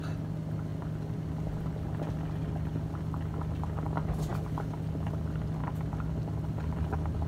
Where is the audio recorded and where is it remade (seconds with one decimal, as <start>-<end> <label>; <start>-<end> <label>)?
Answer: 0.0-7.3 recorded